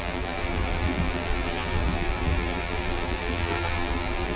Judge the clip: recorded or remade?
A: remade